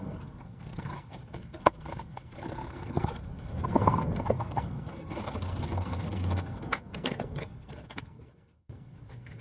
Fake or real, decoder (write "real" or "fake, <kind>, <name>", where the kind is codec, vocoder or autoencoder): fake, codec, SNAC